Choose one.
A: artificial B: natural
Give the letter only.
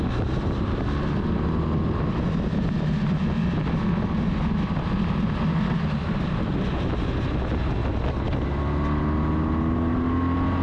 B